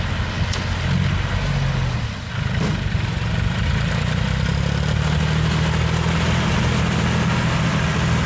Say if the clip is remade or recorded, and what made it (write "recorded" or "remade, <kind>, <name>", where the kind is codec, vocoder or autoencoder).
recorded